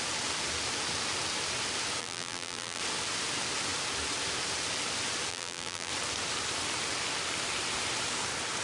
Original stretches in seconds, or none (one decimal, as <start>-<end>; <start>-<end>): 0.0-2.0; 2.8-5.3; 5.9-8.6